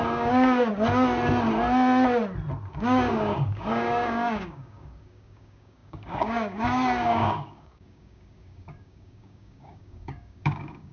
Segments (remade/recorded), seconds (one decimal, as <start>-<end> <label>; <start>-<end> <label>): 0.0-0.7 remade; 0.7-2.7 recorded; 2.7-10.9 remade